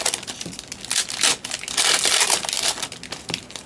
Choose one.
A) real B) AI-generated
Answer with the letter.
A